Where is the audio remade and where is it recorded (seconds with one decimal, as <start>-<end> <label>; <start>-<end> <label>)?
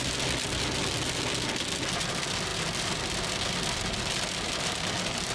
0.0-5.3 recorded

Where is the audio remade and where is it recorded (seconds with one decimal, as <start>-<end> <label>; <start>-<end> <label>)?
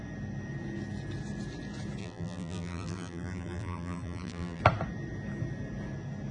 0.0-2.0 recorded; 2.0-4.6 remade; 4.6-6.3 recorded